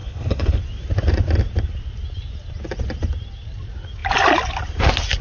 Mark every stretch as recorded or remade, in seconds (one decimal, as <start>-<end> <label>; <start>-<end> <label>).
0.0-0.6 remade; 0.6-5.2 recorded